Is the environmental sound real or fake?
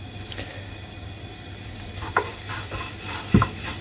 real